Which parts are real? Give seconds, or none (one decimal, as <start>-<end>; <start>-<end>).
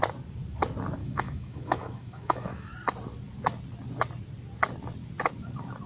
0.0-1.0; 2.7-5.9